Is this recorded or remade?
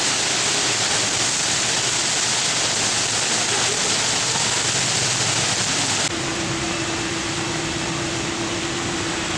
recorded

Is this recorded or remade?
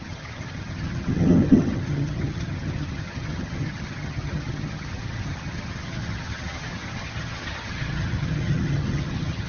remade